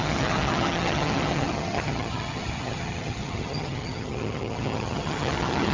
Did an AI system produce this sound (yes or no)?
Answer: yes